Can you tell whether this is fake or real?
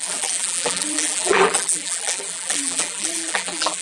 fake